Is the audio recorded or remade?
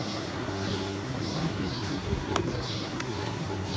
remade